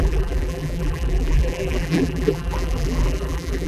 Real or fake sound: fake